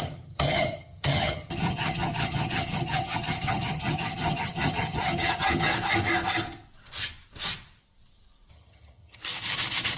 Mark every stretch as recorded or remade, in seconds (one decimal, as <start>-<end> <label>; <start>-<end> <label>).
0.0-5.7 remade; 5.7-8.5 recorded; 8.5-9.2 remade; 9.2-10.0 recorded